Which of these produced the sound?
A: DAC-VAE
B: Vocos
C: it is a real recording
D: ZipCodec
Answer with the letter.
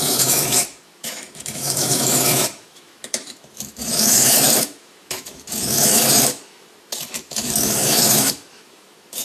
A